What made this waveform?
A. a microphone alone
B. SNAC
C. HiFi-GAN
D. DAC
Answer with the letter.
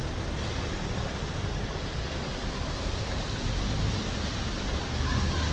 A